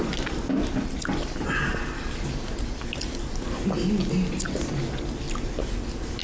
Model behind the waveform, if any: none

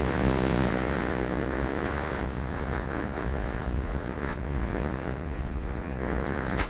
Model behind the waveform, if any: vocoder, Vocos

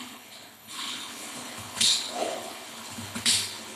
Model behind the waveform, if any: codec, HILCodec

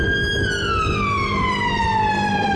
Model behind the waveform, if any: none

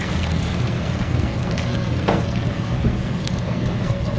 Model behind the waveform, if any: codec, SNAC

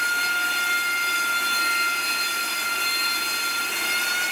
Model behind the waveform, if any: none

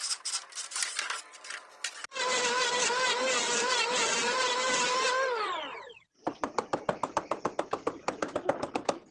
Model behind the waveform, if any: none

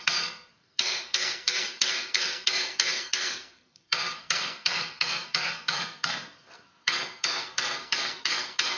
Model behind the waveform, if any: codec, SNAC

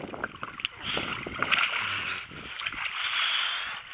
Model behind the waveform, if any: none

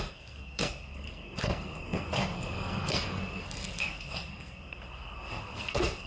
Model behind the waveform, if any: codec, SNAC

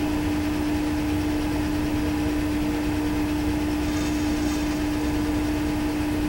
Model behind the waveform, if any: none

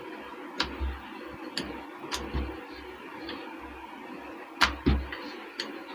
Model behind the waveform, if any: none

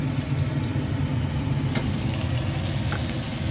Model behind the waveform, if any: none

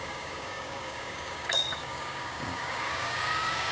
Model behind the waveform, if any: codec, DAC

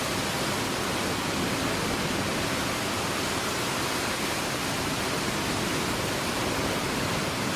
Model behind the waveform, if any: none